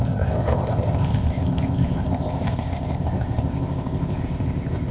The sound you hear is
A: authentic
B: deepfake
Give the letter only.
B